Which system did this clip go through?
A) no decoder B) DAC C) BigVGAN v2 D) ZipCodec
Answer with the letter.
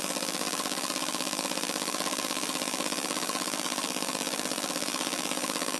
C